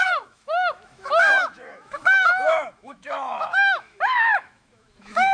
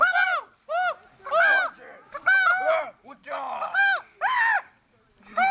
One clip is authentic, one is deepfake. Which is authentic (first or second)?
second